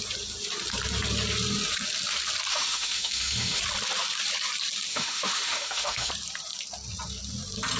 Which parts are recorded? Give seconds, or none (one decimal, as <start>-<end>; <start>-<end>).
0.0-2.5; 3.6-4.9; 6.1-7.8